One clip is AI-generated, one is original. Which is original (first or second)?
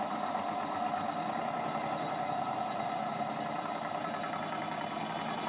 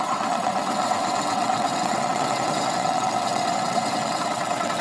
first